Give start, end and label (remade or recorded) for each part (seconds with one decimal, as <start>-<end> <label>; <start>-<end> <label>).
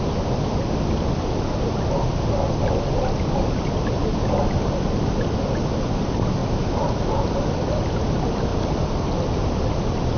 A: 0.0-10.2 recorded